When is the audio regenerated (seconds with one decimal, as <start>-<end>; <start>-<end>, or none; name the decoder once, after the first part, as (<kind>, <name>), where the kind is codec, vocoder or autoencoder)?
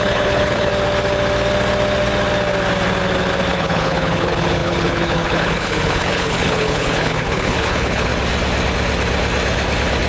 0.0-0.7 (codec, HILCodec); 3.5-8.1